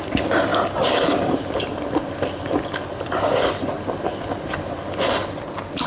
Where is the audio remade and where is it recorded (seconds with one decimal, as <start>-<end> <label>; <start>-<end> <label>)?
0.0-5.9 recorded